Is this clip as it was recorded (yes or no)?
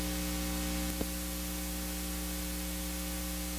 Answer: yes